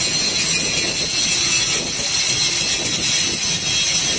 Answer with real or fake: real